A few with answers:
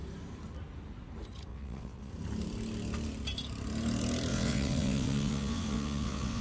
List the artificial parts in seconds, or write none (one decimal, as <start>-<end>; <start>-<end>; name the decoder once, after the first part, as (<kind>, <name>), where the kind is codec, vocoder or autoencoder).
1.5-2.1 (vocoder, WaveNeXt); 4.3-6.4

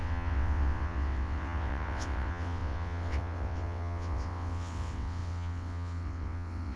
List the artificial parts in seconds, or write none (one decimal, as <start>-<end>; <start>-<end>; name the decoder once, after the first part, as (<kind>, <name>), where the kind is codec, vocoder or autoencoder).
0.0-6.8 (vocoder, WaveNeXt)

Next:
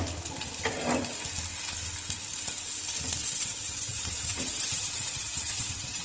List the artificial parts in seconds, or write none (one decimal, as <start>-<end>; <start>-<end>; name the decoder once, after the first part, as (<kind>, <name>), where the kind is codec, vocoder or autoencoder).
3.2-6.0 (vocoder, WaveNeXt)